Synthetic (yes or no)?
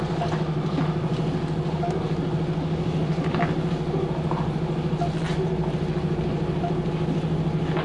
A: no